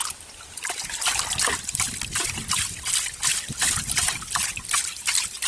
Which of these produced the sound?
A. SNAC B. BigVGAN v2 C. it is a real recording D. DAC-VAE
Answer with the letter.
B